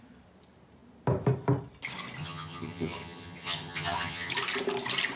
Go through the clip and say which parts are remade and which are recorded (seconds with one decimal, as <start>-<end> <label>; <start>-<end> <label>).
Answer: 0.0-2.2 recorded; 2.2-4.3 remade; 4.3-5.2 recorded